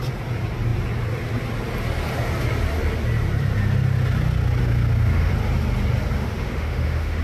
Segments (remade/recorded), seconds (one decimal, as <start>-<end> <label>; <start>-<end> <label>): 0.0-4.6 recorded; 4.6-5.3 remade; 5.3-6.2 recorded; 6.2-7.2 remade